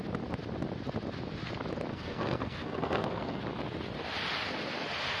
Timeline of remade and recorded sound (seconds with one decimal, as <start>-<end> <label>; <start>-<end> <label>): 0.0-1.9 recorded; 1.9-3.4 remade; 3.4-5.2 recorded